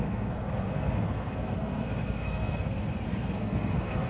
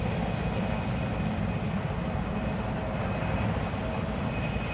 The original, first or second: second